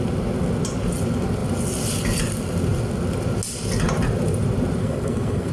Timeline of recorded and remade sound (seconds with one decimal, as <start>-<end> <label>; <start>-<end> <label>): 0.0-4.8 recorded; 4.8-5.5 remade

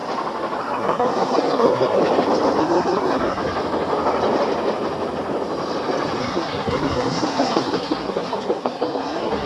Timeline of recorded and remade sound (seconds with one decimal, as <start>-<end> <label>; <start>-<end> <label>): 0.0-0.6 recorded; 0.6-2.0 remade; 2.0-2.6 recorded; 2.6-3.4 remade; 3.4-6.2 recorded; 6.2-9.5 remade

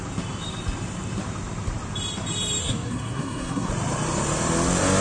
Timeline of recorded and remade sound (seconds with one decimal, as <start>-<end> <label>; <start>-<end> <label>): 0.0-2.6 recorded; 2.6-3.7 remade; 3.7-5.0 recorded